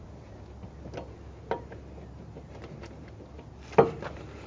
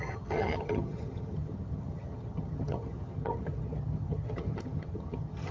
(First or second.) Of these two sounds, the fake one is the second